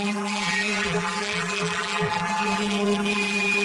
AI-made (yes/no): yes